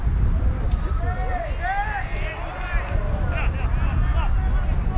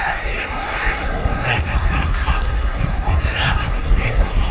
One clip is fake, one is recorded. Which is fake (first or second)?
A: second